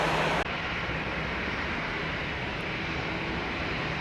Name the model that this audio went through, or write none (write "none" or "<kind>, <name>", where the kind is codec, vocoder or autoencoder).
none